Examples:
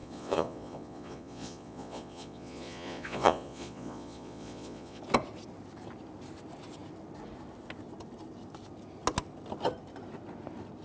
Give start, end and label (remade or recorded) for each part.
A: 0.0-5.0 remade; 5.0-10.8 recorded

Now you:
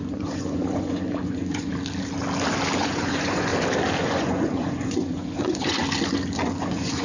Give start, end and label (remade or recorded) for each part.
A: 0.0-1.7 remade; 1.7-2.8 recorded; 2.8-3.5 remade; 3.5-4.0 recorded; 4.0-5.8 remade; 5.8-6.6 recorded; 6.6-7.0 remade